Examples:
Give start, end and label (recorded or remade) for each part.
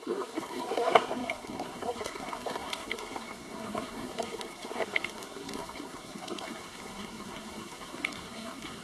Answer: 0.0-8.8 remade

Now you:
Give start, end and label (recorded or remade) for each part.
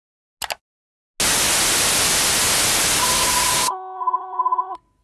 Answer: 0.0-3.0 recorded; 3.0-5.0 remade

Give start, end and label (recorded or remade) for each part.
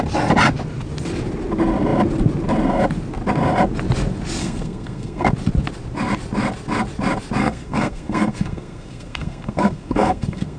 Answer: 0.0-4.4 recorded; 4.4-5.3 remade; 5.3-7.4 recorded; 7.4-10.6 remade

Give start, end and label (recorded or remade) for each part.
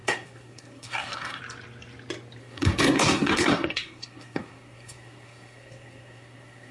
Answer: 0.0-1.4 remade; 1.4-2.4 recorded; 2.4-6.7 remade